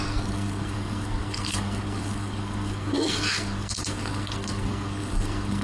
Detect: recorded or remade remade